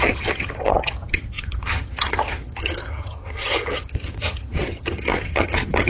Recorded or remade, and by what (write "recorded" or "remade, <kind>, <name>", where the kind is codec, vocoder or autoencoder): remade, vocoder, HiFi-GAN